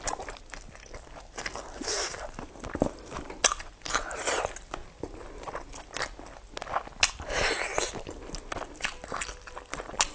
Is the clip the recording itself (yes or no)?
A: yes